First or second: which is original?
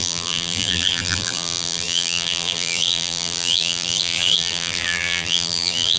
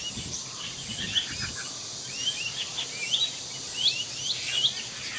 second